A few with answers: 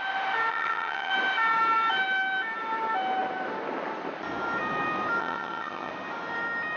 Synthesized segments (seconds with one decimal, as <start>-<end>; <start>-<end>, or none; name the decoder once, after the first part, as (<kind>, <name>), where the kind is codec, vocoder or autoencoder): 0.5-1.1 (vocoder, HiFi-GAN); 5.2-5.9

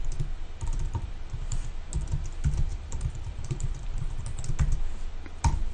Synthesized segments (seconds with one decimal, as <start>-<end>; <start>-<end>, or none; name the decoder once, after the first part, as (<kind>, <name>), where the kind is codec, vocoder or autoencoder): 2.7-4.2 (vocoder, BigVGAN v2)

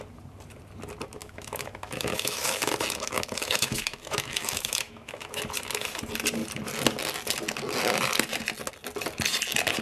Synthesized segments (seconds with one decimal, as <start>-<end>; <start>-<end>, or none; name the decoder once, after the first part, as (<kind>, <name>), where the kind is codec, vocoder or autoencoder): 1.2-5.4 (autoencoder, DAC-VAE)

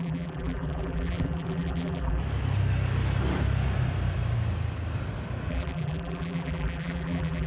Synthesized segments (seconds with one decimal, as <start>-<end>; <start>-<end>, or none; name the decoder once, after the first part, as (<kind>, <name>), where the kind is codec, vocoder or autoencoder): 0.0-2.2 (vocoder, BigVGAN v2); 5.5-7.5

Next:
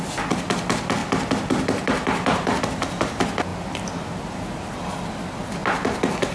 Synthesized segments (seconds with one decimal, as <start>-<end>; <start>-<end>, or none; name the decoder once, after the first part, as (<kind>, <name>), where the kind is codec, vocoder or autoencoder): 1.0-2.6 (vocoder, BigVGAN v2)

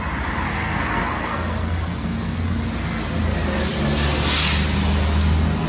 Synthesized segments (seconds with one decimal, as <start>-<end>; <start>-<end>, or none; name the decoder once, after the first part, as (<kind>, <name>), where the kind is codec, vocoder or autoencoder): 0.5-2.6 (codec, SNAC)